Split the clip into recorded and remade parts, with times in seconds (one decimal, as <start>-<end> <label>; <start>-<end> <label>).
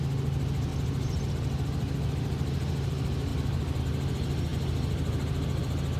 0.0-6.0 recorded